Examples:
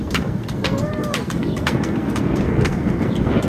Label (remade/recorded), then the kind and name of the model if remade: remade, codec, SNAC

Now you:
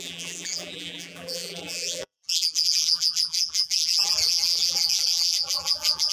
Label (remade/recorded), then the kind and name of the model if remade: remade, vocoder, BigVGAN v2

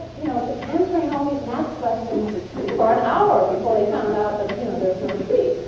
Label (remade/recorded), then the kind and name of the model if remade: remade, vocoder, Vocos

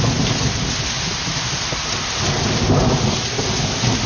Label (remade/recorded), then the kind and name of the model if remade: recorded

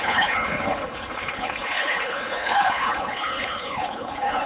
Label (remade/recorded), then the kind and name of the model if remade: remade, codec, HILCodec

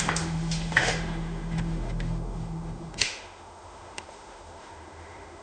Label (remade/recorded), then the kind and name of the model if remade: remade, autoencoder, DAC-VAE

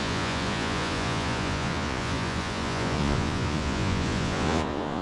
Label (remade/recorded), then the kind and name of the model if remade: remade, vocoder, Vocos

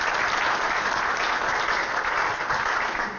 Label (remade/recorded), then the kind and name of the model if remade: recorded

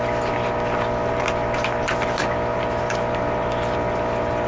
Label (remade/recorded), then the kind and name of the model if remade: recorded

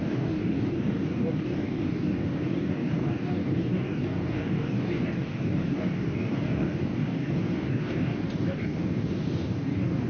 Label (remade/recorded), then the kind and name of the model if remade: remade, codec, DAC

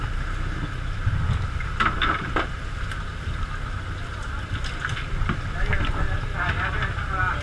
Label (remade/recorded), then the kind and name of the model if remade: recorded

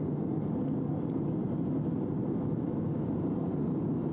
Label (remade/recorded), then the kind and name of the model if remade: recorded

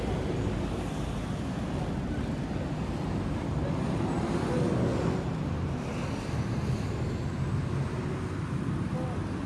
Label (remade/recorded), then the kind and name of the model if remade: recorded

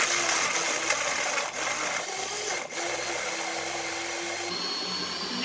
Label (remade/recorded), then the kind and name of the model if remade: recorded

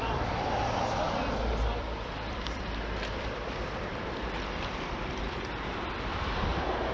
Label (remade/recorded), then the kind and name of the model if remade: remade, vocoder, BigVGAN v2